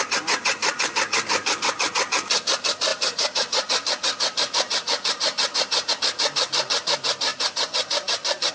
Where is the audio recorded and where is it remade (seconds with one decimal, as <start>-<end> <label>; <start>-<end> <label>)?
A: 0.0-0.6 recorded; 0.6-1.9 remade; 1.9-2.9 recorded; 2.9-5.9 remade; 5.9-7.3 recorded; 7.3-8.5 remade